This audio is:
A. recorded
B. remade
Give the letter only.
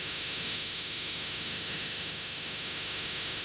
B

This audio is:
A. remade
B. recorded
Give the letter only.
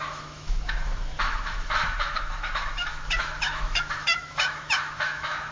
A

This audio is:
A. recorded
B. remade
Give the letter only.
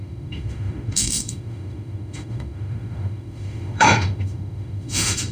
B